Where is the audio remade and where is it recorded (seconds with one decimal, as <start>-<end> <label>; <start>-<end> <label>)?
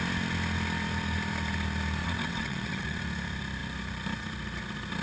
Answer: 0.0-2.0 recorded; 2.0-3.0 remade; 3.0-5.0 recorded